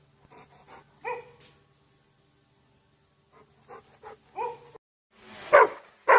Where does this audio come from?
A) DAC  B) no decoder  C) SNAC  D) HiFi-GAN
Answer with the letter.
B